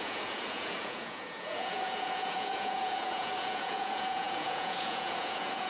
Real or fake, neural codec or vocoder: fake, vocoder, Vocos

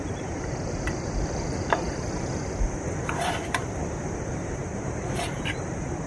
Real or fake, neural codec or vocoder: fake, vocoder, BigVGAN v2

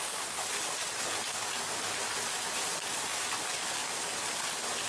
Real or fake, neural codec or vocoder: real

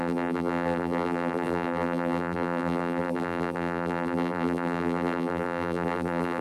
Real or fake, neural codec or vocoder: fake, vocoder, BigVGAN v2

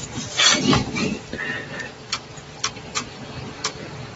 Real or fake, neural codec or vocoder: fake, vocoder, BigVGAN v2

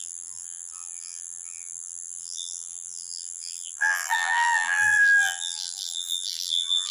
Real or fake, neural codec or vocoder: fake, vocoder, BigVGAN v2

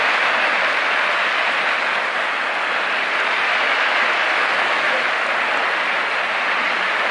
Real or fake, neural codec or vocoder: real